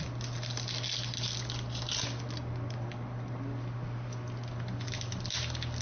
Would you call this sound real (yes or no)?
yes